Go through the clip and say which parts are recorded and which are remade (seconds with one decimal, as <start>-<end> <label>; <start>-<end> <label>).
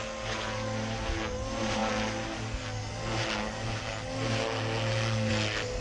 0.0-5.8 recorded